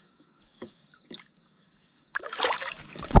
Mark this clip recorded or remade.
remade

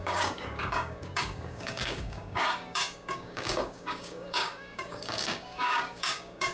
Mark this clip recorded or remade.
remade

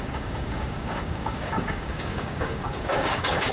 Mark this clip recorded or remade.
remade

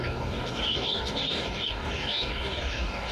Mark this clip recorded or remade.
remade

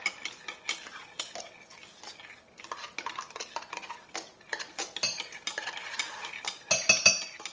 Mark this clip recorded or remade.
recorded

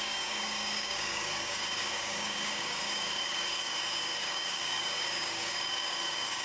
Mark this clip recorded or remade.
remade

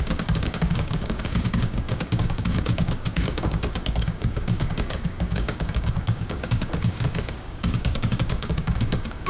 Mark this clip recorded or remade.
remade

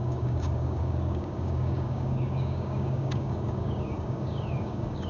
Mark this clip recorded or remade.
remade